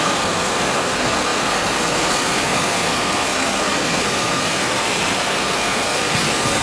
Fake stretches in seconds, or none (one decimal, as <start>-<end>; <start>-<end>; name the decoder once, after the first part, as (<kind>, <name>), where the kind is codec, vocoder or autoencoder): 0.0-6.6 (codec, SNAC)